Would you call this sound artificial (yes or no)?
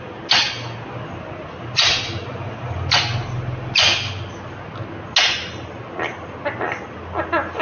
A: no